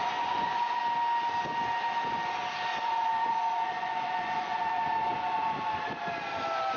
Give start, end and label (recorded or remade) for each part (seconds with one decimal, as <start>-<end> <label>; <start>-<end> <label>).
0.0-0.8 remade; 0.8-2.7 recorded; 2.7-5.7 remade; 5.7-6.8 recorded